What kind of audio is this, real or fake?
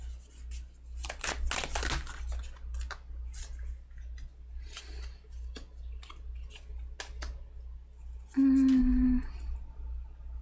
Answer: real